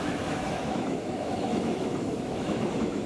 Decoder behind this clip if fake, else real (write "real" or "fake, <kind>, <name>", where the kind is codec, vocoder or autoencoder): fake, autoencoder, DAC-VAE